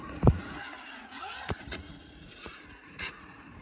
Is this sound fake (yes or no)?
yes